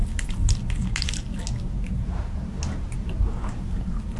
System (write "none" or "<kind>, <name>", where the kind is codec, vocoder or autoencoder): none